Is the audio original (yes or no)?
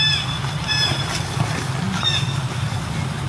yes